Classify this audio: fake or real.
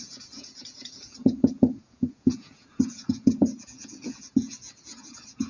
fake